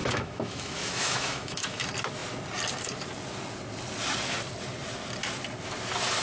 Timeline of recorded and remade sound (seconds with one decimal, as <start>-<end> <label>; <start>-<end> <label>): 0.0-1.8 remade; 1.8-6.2 recorded